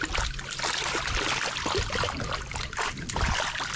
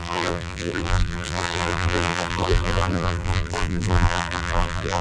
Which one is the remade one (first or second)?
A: second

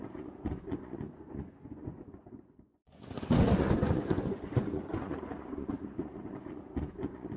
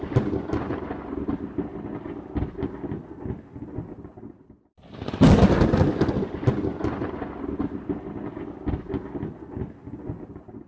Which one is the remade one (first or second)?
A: first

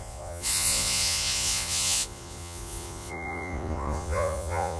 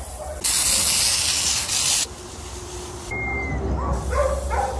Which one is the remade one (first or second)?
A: first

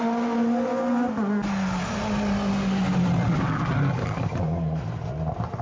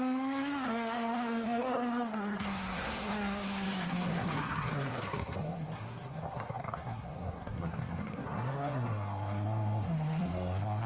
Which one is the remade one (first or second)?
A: second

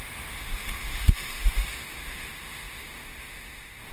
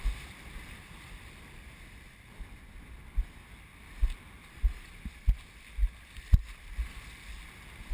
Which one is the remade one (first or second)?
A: first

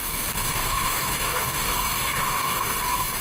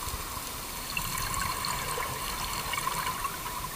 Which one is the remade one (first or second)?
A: first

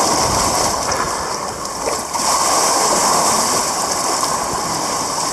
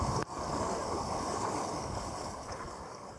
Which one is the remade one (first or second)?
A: second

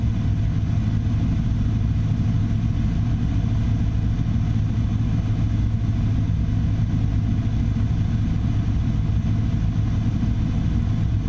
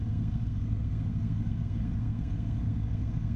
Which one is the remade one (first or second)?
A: second